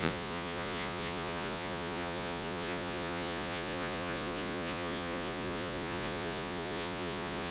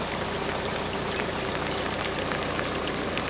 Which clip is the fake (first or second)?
first